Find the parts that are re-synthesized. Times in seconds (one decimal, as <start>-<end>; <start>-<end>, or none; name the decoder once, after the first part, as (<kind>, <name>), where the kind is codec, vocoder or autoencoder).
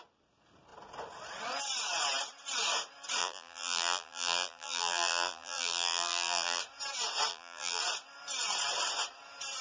3.2-6.6 (vocoder, BigVGAN v2); 7.3-7.8